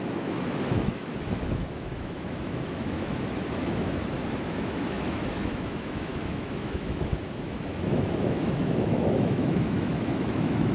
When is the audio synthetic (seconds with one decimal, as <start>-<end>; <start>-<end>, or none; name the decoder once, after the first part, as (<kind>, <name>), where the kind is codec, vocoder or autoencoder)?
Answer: 0.0-10.7 (autoencoder, DAC-VAE)